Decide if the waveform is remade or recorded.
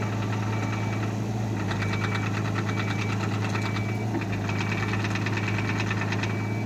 recorded